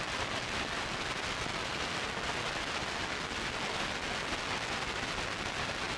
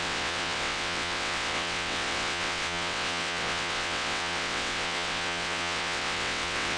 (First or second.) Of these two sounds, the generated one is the second